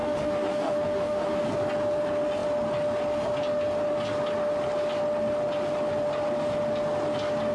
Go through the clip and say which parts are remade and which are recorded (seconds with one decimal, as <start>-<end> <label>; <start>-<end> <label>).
0.0-1.4 remade; 1.4-7.5 recorded